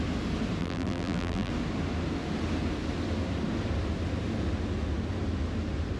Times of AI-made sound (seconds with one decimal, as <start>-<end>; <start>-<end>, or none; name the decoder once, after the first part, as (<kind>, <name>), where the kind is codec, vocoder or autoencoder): 0.6-1.5 (vocoder, BigVGAN v2)